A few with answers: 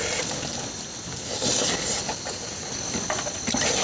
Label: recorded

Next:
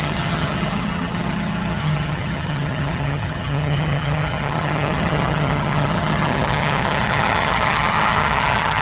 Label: remade